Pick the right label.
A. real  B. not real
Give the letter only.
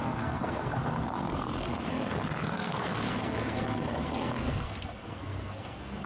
B